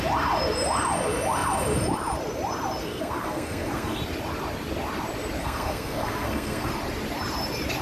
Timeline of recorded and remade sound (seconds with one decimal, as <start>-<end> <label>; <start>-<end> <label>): 0.0-2.8 recorded; 2.8-4.0 remade; 4.0-5.4 recorded; 5.4-6.7 remade; 6.7-7.8 recorded